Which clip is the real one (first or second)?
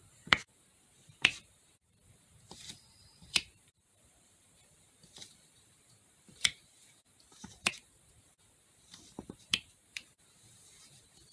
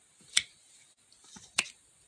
second